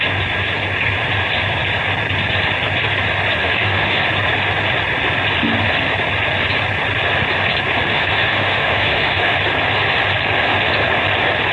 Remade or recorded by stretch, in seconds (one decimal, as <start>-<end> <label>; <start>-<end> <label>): 0.0-3.4 recorded; 3.4-4.0 remade; 4.0-7.9 recorded; 7.9-9.4 remade; 9.4-11.5 recorded